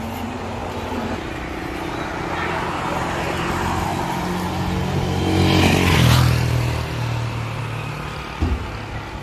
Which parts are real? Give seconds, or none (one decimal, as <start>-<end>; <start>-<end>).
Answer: 0.0-9.2